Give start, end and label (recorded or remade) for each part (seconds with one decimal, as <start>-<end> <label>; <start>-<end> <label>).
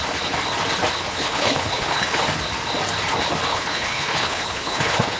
0.0-1.1 recorded; 1.1-2.2 remade; 2.2-3.5 recorded; 3.5-5.2 remade